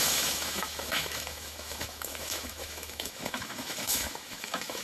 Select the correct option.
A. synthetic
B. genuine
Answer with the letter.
A